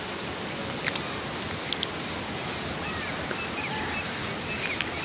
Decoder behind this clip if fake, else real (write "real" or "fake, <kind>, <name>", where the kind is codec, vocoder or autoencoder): real